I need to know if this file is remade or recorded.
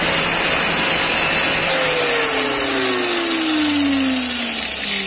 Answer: recorded